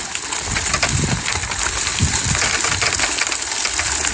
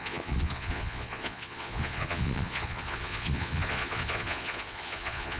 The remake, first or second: second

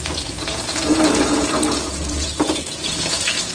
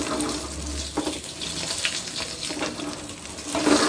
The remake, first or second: first